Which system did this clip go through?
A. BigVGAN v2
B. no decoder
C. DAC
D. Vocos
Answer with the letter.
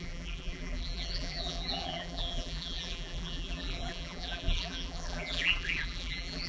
A